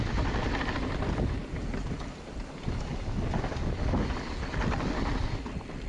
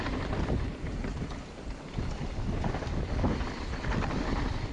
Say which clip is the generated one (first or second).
second